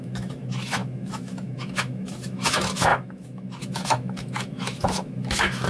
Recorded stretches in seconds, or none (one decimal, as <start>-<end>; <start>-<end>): none